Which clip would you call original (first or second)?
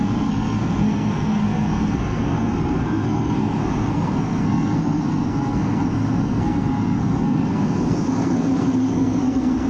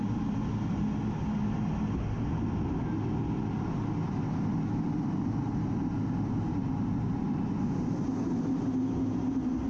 second